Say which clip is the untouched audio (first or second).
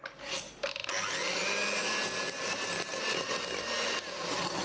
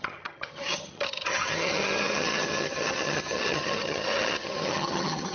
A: first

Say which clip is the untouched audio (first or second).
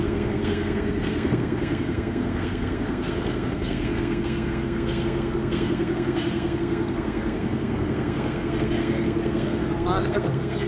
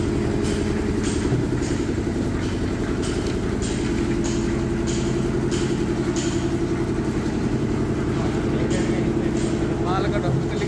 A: second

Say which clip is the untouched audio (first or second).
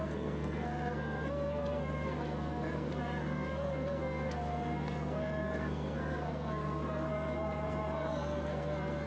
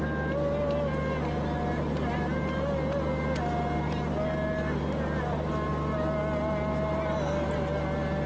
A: second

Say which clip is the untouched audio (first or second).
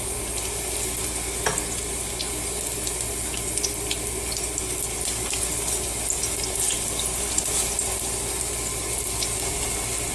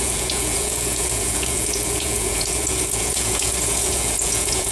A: first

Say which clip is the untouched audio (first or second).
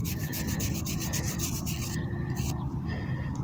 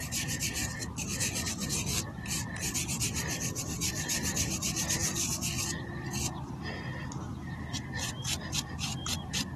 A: first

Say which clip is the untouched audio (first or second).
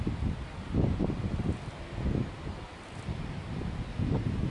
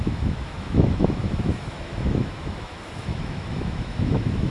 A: first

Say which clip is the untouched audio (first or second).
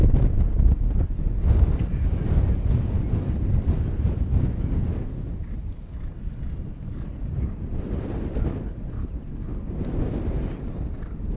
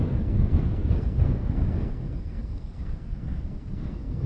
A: first